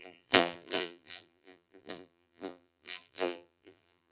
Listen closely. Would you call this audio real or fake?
fake